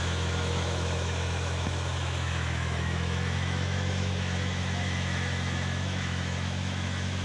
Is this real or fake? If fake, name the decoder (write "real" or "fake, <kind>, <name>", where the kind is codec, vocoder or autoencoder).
fake, autoencoder, DAC-VAE